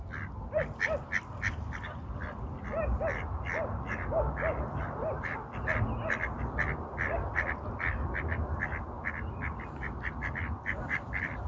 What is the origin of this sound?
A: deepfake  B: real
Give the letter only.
B